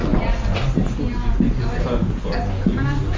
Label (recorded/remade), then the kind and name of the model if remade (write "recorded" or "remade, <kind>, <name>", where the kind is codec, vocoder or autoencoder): recorded